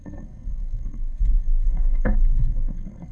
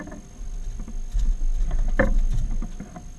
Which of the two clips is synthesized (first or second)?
first